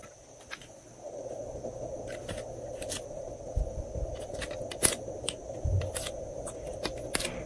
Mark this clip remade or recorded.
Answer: recorded